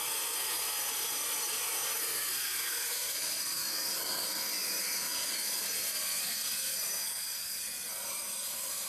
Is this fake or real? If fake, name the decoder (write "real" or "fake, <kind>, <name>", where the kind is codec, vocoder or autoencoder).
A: fake, codec, SNAC